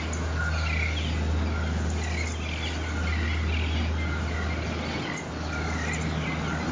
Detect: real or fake real